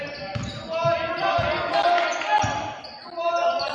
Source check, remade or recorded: recorded